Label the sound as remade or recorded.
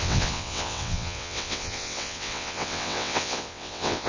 remade